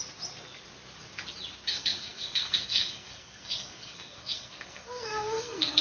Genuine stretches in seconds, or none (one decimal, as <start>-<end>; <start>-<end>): 0.0-1.7